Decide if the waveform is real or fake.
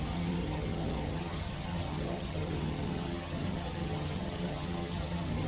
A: fake